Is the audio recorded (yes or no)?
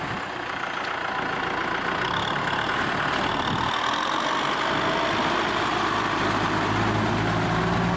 yes